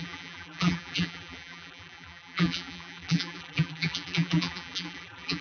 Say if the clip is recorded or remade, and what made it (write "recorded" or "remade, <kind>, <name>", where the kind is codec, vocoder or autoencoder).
remade, vocoder, BigVGAN v2